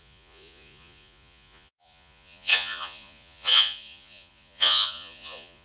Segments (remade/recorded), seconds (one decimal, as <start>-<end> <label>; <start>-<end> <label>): 0.0-5.6 remade